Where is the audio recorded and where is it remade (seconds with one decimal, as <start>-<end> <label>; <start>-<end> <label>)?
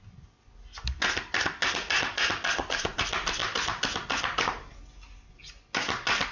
0.0-6.3 recorded